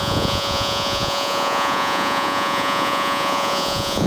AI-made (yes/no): yes